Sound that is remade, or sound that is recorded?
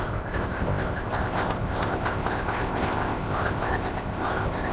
remade